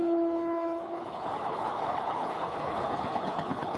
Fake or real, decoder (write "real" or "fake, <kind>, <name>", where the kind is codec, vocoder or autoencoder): fake, codec, HILCodec